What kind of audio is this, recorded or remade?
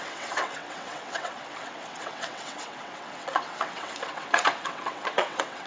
remade